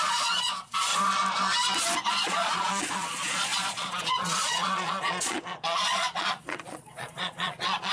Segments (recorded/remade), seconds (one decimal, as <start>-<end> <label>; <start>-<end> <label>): 0.0-0.9 remade; 0.9-2.1 recorded; 2.1-7.9 remade